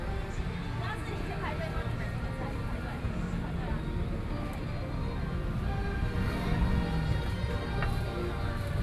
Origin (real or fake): real